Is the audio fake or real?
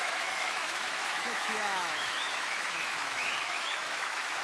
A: fake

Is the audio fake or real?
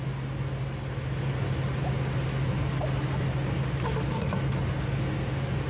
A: real